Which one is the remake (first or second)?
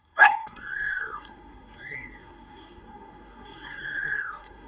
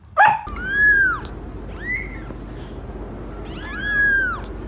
first